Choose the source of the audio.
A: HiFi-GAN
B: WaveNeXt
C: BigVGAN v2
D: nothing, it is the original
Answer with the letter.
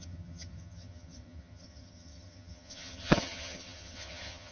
A